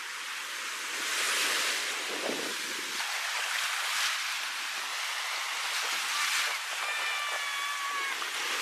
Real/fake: real